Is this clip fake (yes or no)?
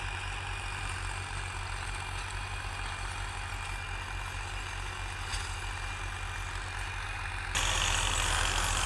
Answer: no